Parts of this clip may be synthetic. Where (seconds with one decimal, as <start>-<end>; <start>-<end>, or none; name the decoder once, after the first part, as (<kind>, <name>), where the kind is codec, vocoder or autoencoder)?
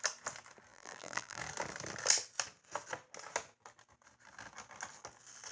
0.7-1.4 (vocoder, BigVGAN v2)